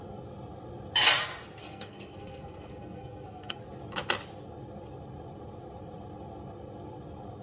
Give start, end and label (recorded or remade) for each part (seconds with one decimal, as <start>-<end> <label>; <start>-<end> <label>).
0.0-1.6 recorded; 1.6-3.6 remade; 3.6-7.4 recorded